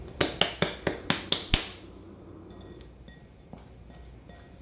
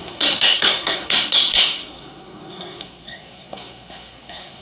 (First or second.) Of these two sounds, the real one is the first